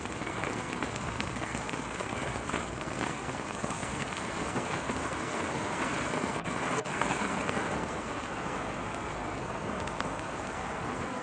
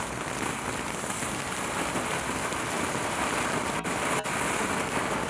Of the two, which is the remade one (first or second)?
first